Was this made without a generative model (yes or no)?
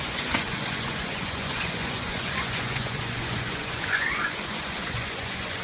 no